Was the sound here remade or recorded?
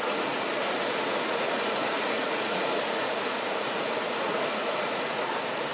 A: remade